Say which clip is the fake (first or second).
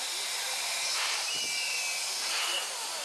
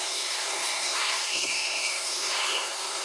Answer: second